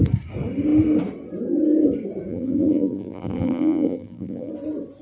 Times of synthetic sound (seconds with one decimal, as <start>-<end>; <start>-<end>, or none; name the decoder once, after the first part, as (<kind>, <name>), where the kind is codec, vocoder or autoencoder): 2.3-4.5 (vocoder, BigVGAN v2)